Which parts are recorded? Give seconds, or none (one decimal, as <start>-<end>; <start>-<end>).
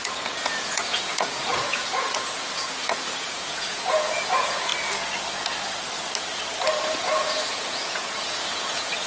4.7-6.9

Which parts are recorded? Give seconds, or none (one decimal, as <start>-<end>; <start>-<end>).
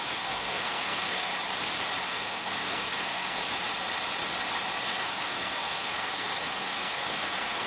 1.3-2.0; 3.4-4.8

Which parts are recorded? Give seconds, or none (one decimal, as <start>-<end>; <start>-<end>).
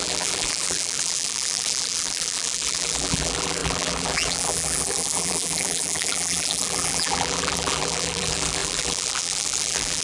none